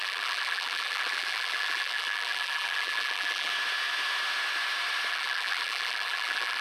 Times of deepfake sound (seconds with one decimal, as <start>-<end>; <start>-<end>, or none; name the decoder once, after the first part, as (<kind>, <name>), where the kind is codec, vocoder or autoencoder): 0.0-3.5 (vocoder, BigVGAN v2); 5.1-6.6